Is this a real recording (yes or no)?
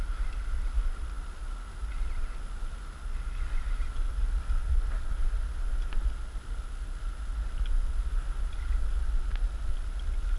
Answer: yes